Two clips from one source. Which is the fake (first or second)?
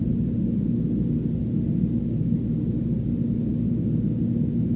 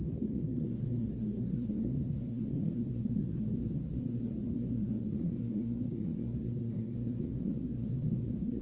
second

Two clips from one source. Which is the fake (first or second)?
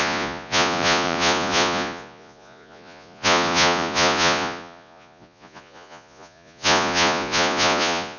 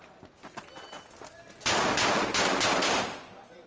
first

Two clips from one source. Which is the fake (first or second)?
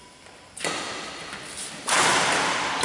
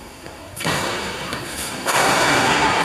second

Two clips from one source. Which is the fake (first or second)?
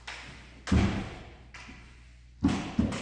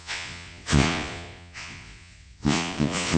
second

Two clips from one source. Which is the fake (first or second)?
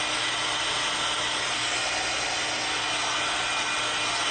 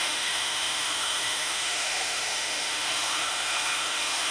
second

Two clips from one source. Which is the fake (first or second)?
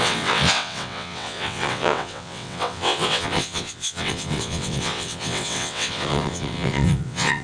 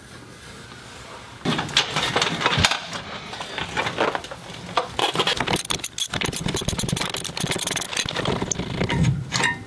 first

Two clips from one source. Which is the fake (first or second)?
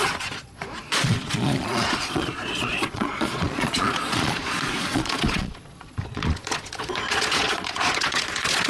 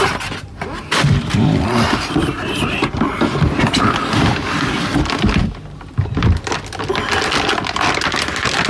first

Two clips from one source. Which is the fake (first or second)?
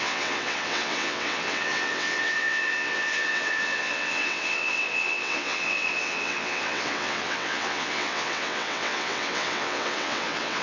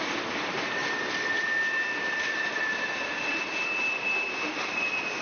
first